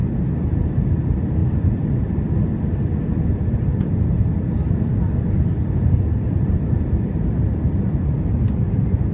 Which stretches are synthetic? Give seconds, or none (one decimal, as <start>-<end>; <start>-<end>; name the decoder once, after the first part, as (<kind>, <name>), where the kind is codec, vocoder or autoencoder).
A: 0.5-1.4 (vocoder, BigVGAN v2); 6.3-9.1